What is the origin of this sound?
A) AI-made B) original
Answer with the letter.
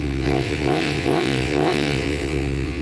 A